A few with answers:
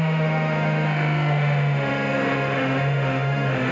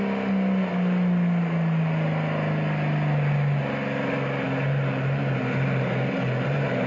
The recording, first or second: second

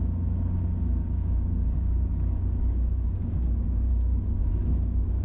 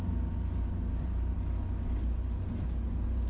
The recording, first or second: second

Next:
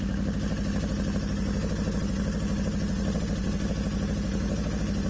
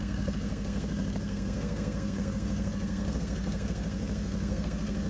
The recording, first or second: first